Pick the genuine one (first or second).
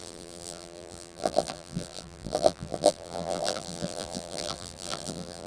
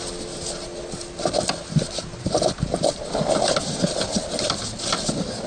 second